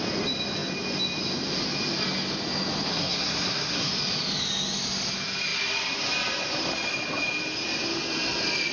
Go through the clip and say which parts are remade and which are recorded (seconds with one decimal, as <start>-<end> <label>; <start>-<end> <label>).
0.0-2.9 recorded; 2.9-3.9 remade; 3.9-8.7 recorded